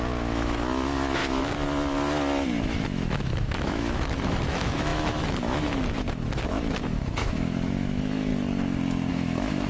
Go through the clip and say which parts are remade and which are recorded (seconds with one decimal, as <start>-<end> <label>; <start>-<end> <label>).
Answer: 0.0-1.2 remade; 1.2-2.6 recorded; 2.6-8.3 remade; 8.3-9.1 recorded; 9.1-9.7 remade